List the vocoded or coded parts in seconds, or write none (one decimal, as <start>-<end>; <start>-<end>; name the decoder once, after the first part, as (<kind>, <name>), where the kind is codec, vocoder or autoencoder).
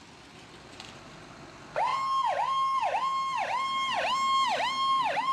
none